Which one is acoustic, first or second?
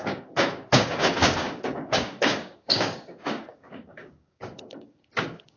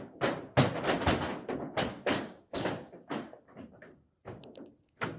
second